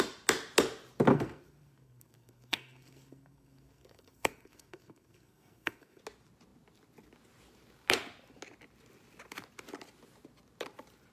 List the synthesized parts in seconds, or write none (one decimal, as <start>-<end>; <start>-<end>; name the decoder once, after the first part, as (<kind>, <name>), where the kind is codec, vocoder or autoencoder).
1.1-6.0 (codec, SNAC)